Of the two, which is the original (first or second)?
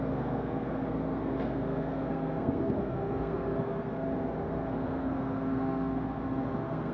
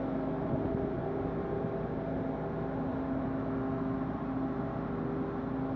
second